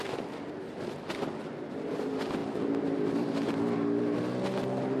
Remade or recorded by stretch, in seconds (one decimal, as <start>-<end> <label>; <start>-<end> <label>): 0.0-5.0 recorded